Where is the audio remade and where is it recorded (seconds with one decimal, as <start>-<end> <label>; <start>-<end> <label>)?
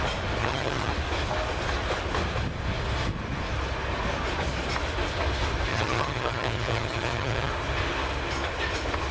0.0-0.4 recorded; 0.4-0.9 remade; 0.9-5.7 recorded; 5.7-7.5 remade; 7.5-9.1 recorded